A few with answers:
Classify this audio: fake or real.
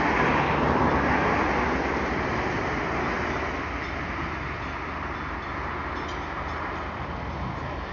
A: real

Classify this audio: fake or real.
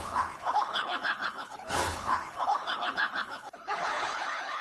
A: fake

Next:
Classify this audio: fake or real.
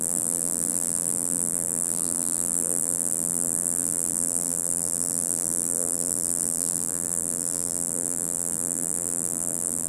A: fake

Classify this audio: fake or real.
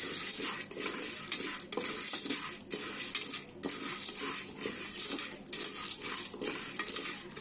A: real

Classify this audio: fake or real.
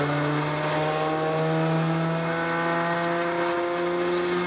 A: real